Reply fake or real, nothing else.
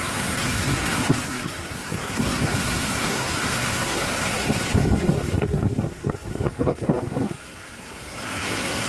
fake